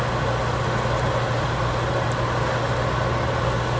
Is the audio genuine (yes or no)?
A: yes